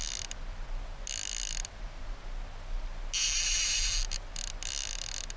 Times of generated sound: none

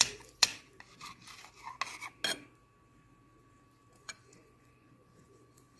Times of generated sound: 0.0-0.5 (vocoder, Vocos); 4.0-5.8

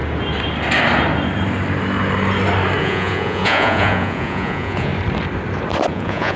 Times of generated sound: 2.8-4.9 (vocoder, Vocos); 5.9-6.4